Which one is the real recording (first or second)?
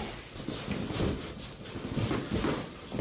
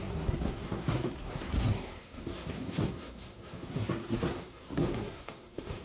first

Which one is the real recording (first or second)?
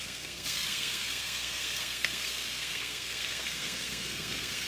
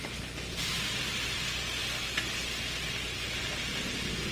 second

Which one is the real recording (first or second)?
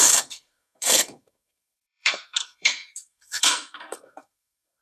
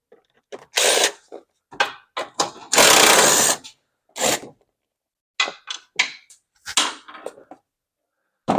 second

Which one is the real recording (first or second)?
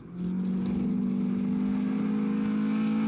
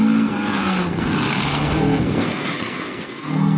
first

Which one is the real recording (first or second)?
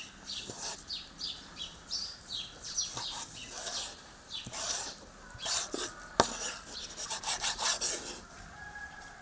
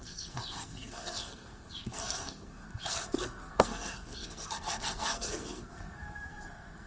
first